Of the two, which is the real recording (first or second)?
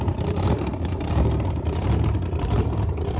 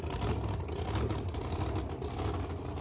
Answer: second